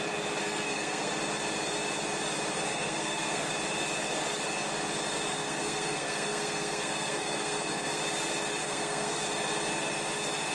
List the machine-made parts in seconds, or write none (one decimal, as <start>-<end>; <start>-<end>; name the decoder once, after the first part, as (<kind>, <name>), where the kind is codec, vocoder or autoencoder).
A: 0.4-1.2 (codec, SNAC); 2.7-3.5; 5.3-8.0; 8.6-9.2